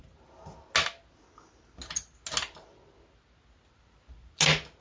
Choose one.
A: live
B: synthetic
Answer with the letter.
A